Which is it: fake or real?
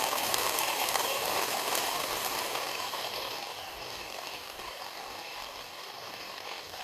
fake